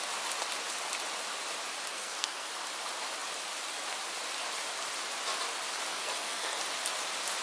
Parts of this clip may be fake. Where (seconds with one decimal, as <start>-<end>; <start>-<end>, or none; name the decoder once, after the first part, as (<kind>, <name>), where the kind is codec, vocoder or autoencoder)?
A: 1.9-2.5 (codec, SNAC); 5.9-6.6